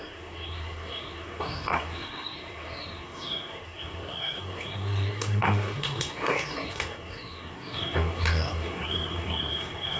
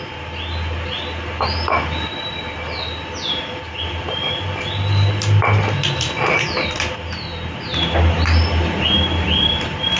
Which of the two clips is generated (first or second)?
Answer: first